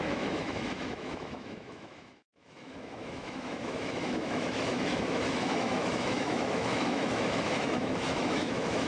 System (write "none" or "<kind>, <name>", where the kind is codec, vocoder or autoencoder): autoencoder, DAC-VAE